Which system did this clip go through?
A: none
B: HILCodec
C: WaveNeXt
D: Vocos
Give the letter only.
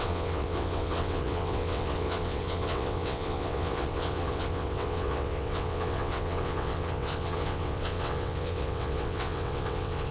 C